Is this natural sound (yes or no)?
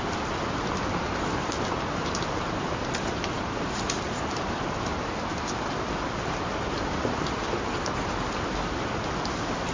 yes